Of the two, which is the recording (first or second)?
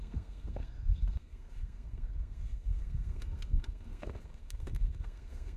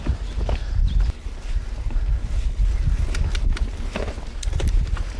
second